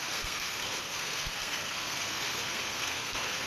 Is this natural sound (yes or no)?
no